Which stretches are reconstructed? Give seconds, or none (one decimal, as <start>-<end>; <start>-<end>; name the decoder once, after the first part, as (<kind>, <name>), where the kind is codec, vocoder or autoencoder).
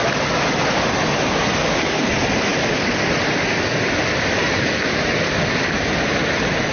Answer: 1.6-2.1 (codec, DAC)